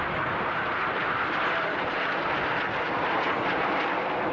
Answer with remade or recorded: recorded